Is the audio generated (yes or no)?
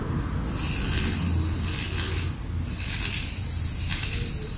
no